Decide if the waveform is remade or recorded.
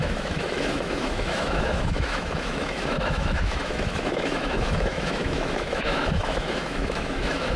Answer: remade